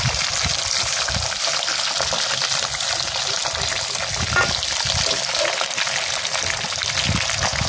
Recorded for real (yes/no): yes